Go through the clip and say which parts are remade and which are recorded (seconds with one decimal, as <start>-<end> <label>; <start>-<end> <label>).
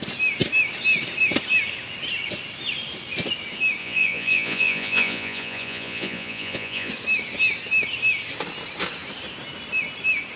0.0-3.8 recorded; 3.8-6.9 remade; 6.9-10.4 recorded